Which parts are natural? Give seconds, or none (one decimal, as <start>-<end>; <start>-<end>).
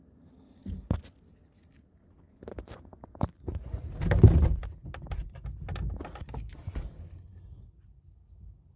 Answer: 0.0-2.4; 3.4-8.8